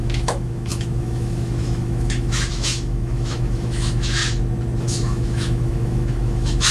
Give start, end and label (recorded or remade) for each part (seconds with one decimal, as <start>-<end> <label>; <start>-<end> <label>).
0.0-4.2 remade; 4.2-4.8 recorded; 4.8-6.7 remade